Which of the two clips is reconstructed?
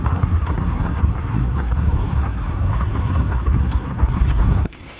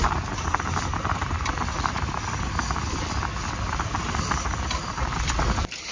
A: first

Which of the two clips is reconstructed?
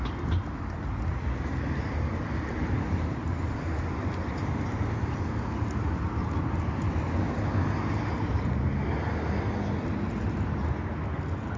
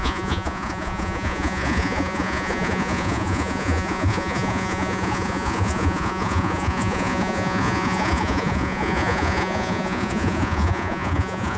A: second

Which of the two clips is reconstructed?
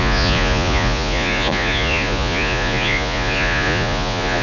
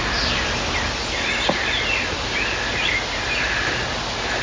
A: first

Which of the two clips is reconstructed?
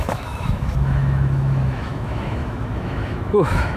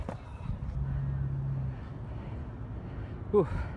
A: first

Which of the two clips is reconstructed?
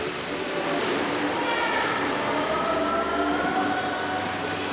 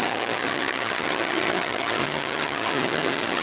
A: second